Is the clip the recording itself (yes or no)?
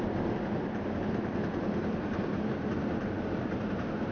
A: yes